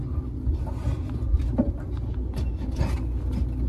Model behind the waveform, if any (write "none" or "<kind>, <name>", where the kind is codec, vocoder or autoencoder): none